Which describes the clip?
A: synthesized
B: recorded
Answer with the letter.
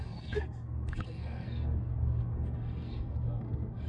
A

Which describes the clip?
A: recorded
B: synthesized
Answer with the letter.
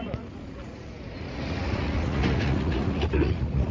B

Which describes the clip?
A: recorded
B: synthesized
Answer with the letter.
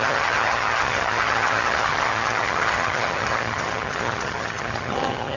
B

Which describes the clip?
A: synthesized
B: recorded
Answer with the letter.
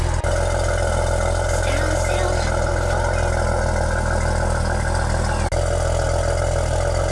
B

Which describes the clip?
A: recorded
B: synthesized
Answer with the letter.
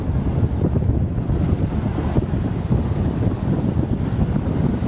A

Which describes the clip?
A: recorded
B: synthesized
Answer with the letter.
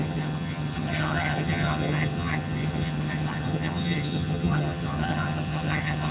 B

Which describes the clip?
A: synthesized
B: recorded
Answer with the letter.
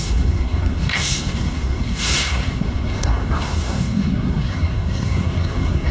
A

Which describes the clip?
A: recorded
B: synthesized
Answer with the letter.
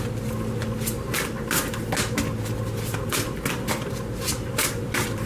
A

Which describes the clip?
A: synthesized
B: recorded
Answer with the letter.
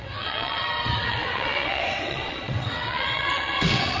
A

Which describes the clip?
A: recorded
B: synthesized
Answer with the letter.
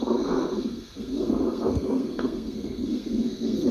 B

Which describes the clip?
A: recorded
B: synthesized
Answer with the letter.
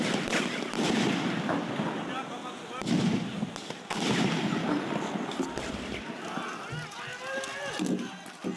A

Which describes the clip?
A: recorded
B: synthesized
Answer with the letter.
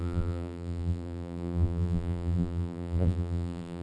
B